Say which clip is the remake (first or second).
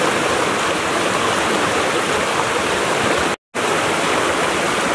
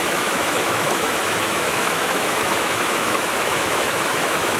second